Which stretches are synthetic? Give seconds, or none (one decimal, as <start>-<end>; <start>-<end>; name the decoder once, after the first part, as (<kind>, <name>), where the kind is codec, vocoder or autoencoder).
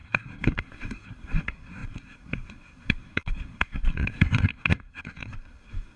0.0-6.0 (codec, SNAC)